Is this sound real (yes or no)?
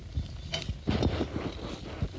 yes